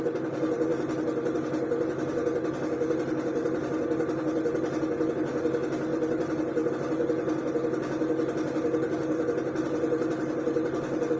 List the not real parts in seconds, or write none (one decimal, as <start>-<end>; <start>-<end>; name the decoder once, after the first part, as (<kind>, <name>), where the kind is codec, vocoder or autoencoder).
5.9-6.7 (vocoder, BigVGAN v2)